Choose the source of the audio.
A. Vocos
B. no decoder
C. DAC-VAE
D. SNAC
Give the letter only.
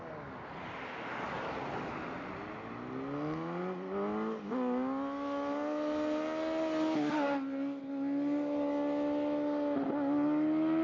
B